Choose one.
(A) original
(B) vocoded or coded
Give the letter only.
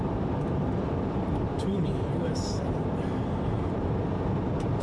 B